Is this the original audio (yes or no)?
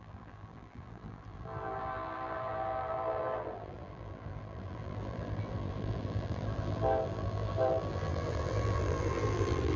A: no